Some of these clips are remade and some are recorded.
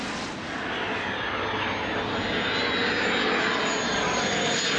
recorded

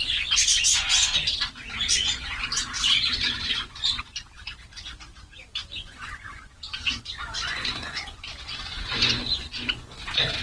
remade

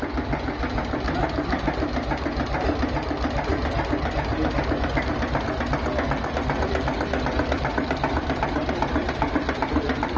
recorded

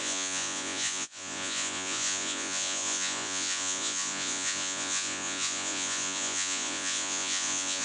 remade